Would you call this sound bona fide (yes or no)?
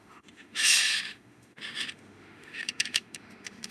no